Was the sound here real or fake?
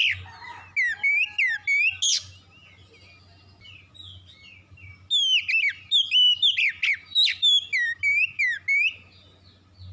real